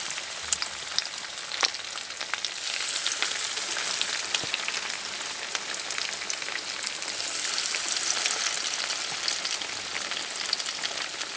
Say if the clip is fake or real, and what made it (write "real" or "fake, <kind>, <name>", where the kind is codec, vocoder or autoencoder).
real